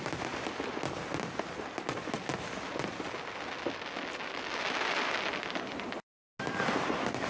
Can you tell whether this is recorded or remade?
recorded